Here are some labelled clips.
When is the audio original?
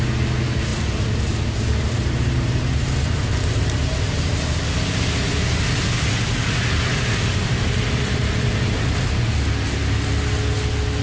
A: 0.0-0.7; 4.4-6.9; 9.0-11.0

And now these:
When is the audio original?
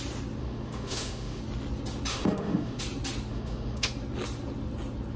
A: 0.0-0.4; 1.4-2.1; 2.8-3.3; 3.9-5.2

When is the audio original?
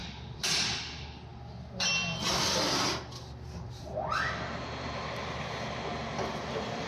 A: 0.8-6.9